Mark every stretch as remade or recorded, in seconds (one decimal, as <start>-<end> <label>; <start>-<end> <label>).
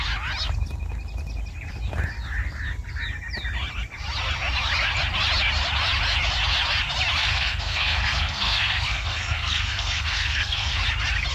0.0-7.2 recorded; 7.2-10.8 remade; 10.8-11.3 recorded